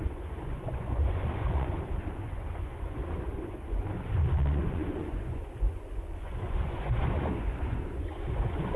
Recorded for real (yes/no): no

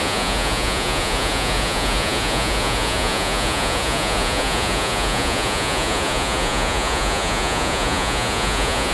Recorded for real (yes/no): no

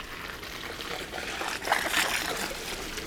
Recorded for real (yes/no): yes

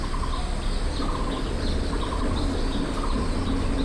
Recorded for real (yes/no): yes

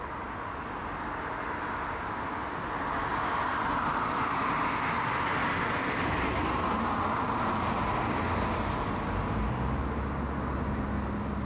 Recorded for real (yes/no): yes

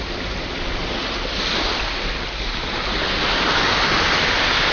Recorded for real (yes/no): yes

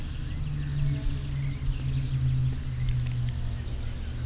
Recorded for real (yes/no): yes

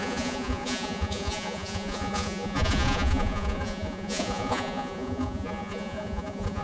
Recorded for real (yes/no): no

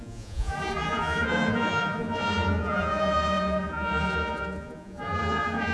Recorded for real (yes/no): no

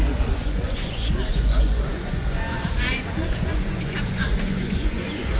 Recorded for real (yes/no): no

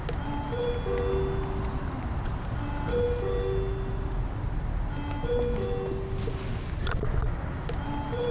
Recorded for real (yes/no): yes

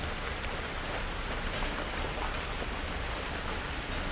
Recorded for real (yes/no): yes